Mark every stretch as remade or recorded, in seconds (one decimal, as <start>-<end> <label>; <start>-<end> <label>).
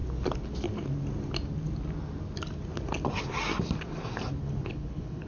0.0-4.4 recorded; 4.4-5.3 remade